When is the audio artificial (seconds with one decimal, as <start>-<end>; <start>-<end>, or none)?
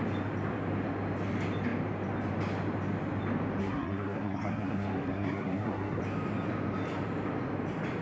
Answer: 3.6-6.0